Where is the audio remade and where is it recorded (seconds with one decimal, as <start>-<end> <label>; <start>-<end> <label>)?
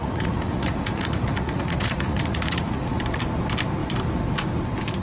0.0-3.0 remade; 3.0-5.0 recorded